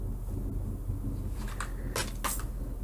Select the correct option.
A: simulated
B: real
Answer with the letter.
B